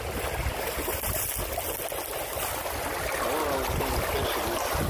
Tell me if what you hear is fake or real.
real